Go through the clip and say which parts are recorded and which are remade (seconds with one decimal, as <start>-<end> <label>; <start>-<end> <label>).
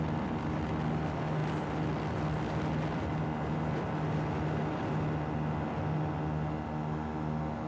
0.0-7.7 recorded